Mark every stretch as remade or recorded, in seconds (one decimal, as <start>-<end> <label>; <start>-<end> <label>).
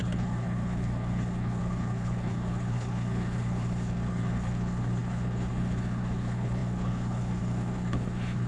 0.0-8.5 remade